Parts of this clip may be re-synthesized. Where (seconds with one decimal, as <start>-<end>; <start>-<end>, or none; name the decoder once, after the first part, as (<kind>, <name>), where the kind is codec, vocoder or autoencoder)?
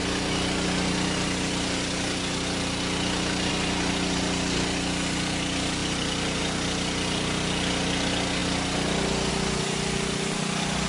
5.8-6.4 (vocoder, BigVGAN v2)